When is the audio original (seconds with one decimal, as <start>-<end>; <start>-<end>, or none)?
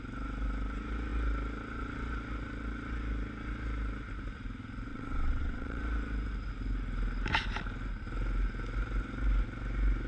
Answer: 0.0-4.9; 5.8-10.1